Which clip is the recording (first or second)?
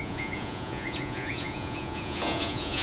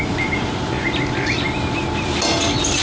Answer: second